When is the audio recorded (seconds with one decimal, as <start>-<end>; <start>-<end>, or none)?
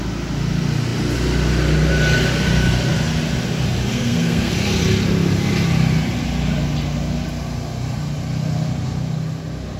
0.0-3.9; 4.5-9.8